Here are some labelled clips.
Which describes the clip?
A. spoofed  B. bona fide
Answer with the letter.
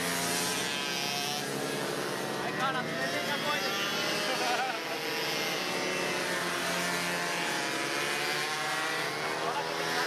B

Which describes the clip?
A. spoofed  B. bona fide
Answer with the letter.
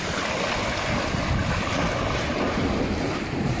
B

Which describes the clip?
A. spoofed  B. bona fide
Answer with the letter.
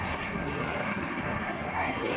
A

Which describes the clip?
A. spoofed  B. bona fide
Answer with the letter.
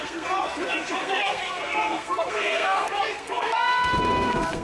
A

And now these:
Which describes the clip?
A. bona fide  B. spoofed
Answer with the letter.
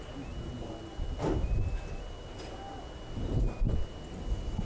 A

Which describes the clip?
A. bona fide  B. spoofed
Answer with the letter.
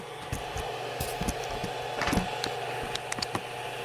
A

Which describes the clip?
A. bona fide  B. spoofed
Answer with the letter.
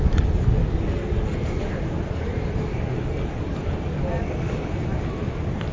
A